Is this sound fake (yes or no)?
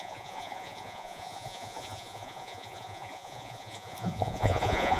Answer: yes